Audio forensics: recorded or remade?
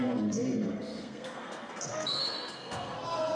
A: remade